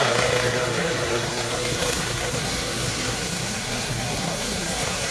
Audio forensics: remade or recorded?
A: remade